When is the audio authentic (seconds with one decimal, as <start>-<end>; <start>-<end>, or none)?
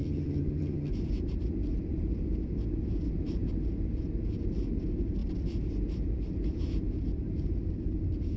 0.9-8.4